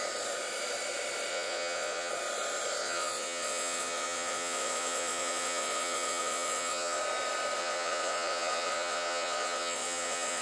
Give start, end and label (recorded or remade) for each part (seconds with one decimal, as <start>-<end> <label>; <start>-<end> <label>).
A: 0.0-1.3 recorded; 1.3-2.1 remade; 2.1-2.8 recorded; 2.8-7.0 remade; 7.0-7.6 recorded; 7.6-10.4 remade